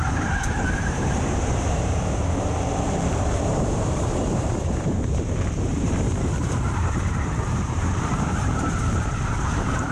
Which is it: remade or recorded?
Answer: remade